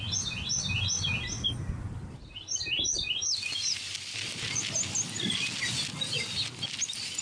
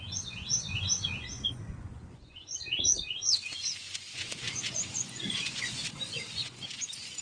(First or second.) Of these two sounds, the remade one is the second